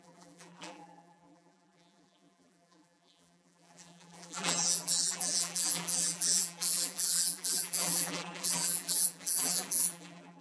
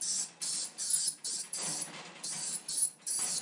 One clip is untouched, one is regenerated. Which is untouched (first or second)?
second